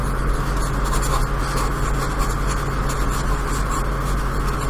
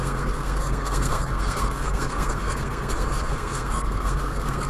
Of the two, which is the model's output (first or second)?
second